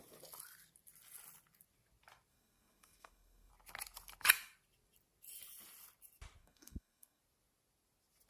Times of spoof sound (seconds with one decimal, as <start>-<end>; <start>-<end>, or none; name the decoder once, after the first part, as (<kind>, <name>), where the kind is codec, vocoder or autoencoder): 2.3-3.5 (codec, SNAC); 6.4-7.2